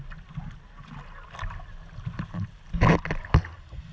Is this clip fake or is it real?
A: real